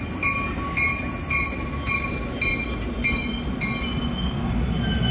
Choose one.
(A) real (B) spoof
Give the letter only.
A